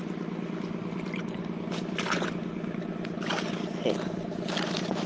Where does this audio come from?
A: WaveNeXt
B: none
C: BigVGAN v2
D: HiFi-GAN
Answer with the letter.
B